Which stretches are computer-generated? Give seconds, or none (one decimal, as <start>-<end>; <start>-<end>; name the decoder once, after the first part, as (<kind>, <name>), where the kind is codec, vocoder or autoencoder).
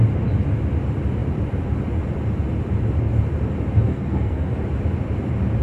3.9-4.5 (codec, SNAC)